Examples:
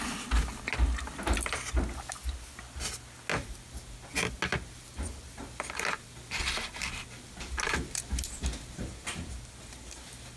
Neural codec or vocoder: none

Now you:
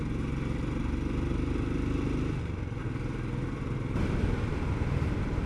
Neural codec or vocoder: none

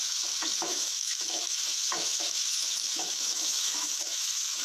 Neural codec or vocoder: autoencoder, DAC-VAE